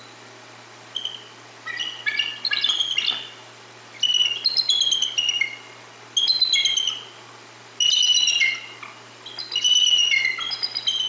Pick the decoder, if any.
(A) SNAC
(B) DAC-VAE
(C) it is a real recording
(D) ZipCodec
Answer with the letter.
C